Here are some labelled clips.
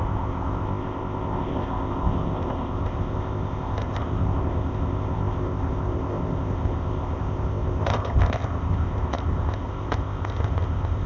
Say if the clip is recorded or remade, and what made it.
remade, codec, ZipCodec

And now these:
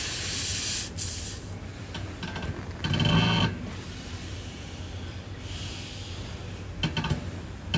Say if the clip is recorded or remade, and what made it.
recorded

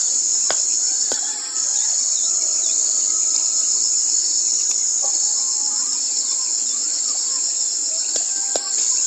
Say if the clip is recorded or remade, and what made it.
recorded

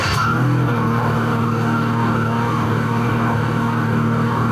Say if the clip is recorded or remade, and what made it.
remade, codec, DAC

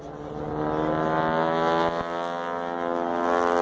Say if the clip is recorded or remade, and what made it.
recorded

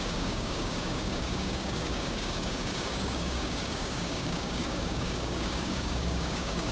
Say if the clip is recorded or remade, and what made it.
remade, codec, DAC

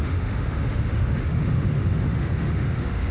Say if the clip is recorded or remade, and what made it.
remade, autoencoder, DAC-VAE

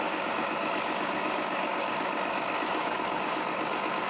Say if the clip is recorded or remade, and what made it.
remade, codec, DAC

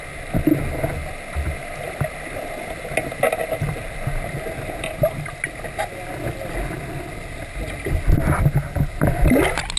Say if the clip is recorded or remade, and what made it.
recorded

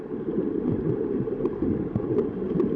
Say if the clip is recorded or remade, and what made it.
recorded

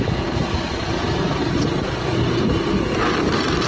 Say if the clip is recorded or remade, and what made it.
recorded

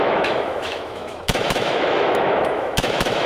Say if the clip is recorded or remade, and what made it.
remade, autoencoder, DAC-VAE